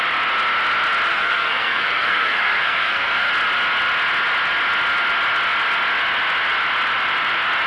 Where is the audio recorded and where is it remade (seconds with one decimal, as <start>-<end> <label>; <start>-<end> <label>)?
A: 0.0-1.1 recorded; 1.1-3.3 remade; 3.3-7.7 recorded